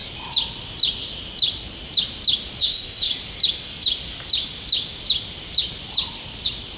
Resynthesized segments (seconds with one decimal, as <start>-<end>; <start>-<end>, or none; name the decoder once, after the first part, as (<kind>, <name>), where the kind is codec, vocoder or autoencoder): 2.6-3.1 (codec, ZipCodec)